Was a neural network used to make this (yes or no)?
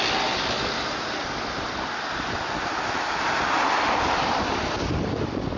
no